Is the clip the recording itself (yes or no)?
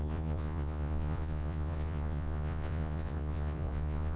no